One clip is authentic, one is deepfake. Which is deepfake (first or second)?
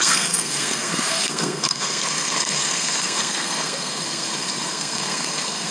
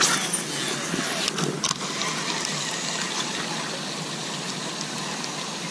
first